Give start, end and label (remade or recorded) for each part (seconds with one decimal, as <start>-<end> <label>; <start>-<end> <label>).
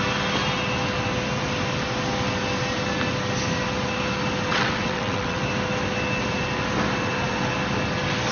0.0-4.5 recorded; 4.5-5.4 remade; 5.4-8.3 recorded